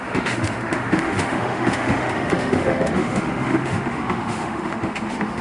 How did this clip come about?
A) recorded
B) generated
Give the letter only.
B